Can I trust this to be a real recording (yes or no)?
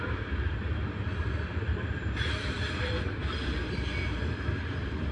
no